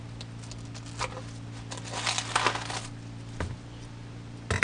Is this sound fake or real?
real